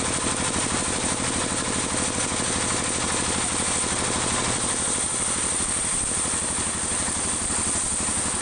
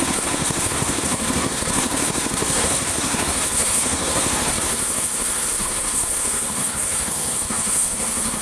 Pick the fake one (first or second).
second